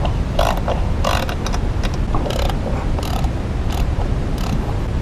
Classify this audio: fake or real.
real